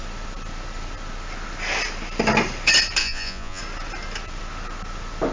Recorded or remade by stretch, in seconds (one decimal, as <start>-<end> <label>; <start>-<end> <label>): 0.0-3.0 recorded; 3.0-3.6 remade; 3.6-5.3 recorded